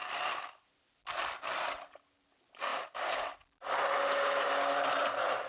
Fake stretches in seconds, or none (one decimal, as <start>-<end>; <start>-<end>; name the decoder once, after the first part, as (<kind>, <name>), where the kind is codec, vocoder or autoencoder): 0.0-0.7 (vocoder, BigVGAN v2); 2.7-5.5